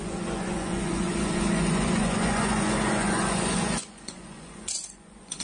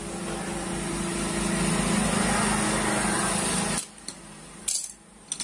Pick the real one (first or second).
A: second